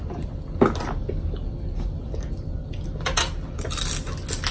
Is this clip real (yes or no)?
yes